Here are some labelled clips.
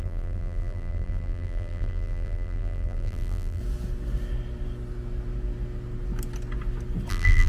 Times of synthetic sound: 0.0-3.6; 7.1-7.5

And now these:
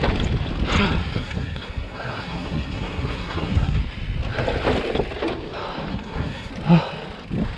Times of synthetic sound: 1.0-3.8; 5.9-6.5

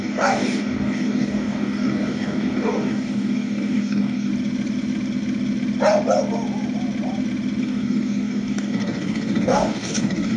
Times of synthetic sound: 0.0-4.3; 7.6-10.4

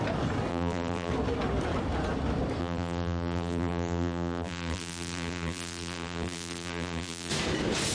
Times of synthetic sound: 0.5-1.1; 2.6-7.3

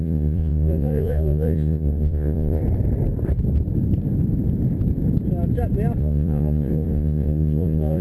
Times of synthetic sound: 0.0-2.6; 6.0-8.0

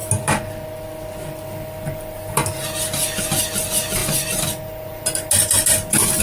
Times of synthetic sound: none

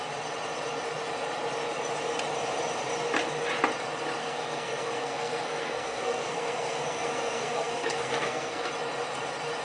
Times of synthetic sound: 4.2-8.7

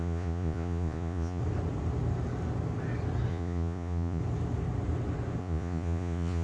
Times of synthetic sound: 0.0-1.4; 3.3-4.2; 5.4-6.4